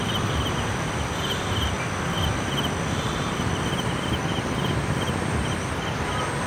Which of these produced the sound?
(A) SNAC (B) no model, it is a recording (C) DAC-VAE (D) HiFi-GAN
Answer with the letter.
B